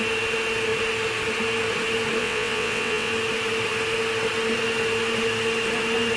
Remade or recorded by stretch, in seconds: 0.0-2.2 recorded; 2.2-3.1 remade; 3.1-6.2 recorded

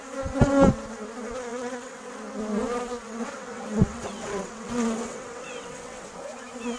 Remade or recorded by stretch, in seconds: 0.0-1.5 recorded; 1.5-2.1 remade; 2.1-3.0 recorded; 3.0-6.1 remade; 6.1-6.8 recorded

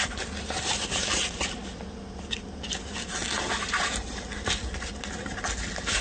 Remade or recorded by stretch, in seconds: 0.0-6.0 recorded

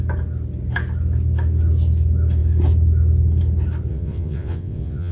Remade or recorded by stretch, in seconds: 0.0-3.9 recorded; 3.9-5.1 remade

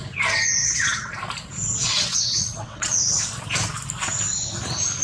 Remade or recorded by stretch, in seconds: 0.0-0.6 recorded; 0.6-1.1 remade; 1.1-1.8 recorded; 1.8-3.0 remade; 3.0-5.0 recorded

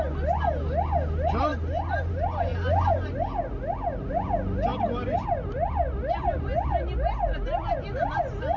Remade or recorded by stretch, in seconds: 0.0-8.6 recorded

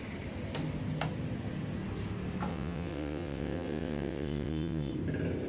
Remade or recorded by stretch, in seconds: 0.0-2.5 recorded; 2.5-4.9 remade; 4.9-5.5 recorded